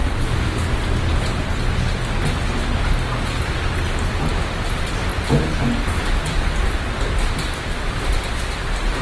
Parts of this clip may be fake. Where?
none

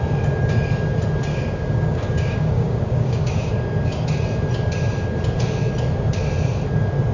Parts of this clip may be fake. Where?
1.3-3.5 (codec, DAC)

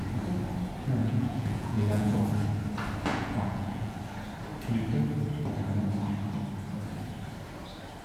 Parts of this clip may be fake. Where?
1.0-2.2 (vocoder, Vocos); 3.1-4.0